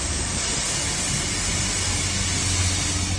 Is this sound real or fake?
real